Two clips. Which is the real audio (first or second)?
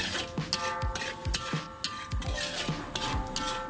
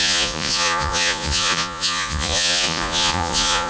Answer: first